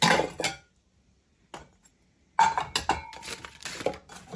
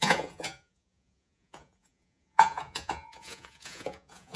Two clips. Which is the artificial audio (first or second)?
second